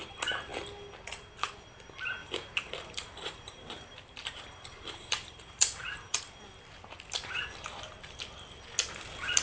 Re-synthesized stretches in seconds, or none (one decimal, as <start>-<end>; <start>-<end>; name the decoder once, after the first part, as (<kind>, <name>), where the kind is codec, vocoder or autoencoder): 2.2-6.2 (vocoder, BigVGAN v2)